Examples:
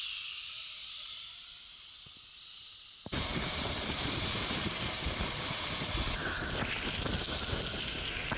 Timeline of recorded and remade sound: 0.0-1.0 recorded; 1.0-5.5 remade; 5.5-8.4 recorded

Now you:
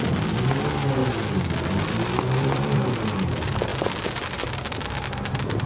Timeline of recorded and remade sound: 0.0-1.0 recorded; 1.0-2.9 remade; 2.9-3.7 recorded; 3.7-4.3 remade; 4.3-5.7 recorded

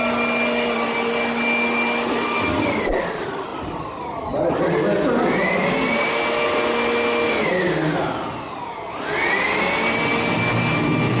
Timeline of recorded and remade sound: 0.0-11.2 recorded

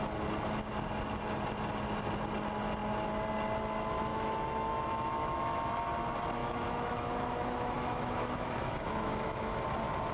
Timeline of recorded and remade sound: 0.0-4.1 recorded; 4.1-5.7 remade; 5.7-6.4 recorded; 6.4-9.5 remade; 9.5-10.1 recorded

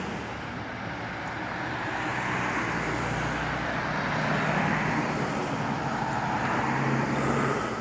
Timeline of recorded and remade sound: 0.0-7.8 recorded